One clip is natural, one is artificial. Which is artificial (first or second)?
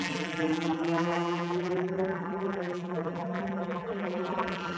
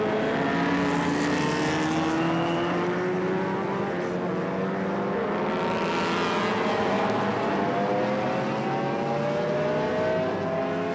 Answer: first